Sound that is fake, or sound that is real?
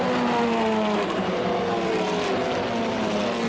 real